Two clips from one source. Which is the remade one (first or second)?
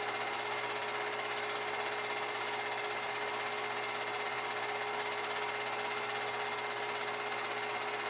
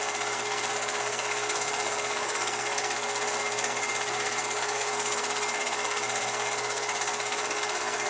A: second